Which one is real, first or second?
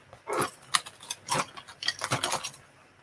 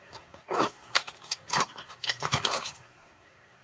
first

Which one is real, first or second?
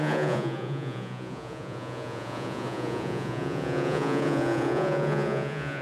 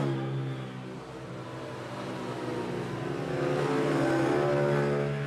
second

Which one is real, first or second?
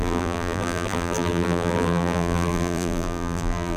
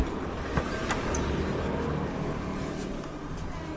second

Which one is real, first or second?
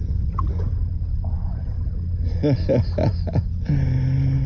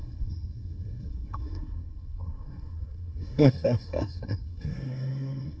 first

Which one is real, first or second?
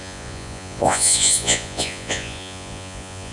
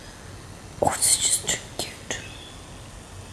second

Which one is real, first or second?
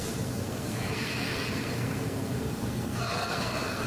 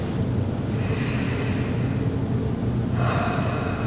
second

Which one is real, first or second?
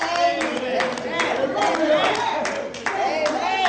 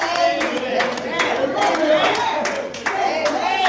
first